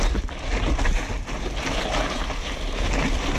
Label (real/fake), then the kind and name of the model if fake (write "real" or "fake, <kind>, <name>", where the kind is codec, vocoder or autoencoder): real